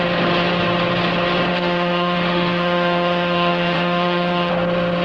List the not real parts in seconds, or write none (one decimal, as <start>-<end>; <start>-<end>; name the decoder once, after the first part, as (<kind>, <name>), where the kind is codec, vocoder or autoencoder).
1.5-4.5 (autoencoder, DAC-VAE)